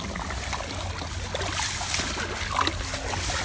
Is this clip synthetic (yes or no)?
no